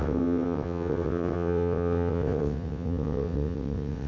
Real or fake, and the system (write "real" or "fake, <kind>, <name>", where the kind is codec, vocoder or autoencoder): fake, vocoder, WaveNeXt